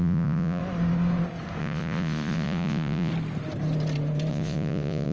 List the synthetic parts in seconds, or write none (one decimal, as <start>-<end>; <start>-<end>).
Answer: 0.0-0.6; 1.6-3.1; 4.3-5.1